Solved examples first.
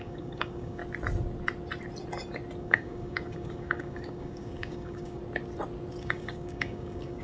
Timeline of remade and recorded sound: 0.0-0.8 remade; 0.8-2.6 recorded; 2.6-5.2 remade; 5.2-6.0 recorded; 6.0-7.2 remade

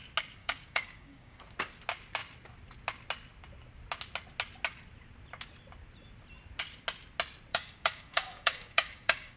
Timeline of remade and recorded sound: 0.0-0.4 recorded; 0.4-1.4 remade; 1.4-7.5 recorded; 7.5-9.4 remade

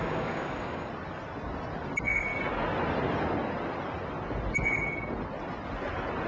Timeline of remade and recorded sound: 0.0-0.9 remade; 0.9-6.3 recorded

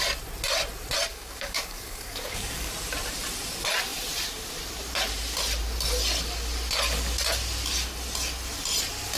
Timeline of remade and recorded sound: 0.0-1.1 recorded; 1.1-2.7 remade; 2.7-9.2 recorded

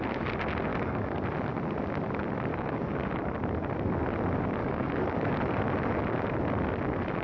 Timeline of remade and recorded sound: 0.0-0.7 recorded; 0.7-1.2 remade; 1.2-2.5 recorded; 2.5-3.2 remade; 3.2-4.6 recorded; 4.6-5.3 remade; 5.3-7.2 recorded

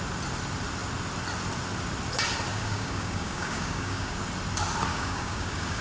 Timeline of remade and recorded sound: 0.0-2.5 recorded; 2.5-4.2 remade; 4.2-4.9 recorded; 4.9-5.8 remade